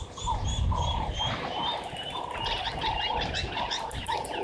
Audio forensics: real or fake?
fake